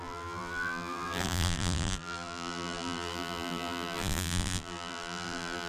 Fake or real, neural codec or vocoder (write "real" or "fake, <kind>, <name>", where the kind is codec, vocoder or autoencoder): fake, vocoder, BigVGAN v2